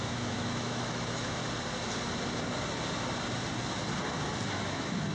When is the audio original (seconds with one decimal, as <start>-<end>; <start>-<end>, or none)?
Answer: 1.4-4.5